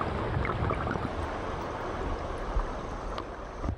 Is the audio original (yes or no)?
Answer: yes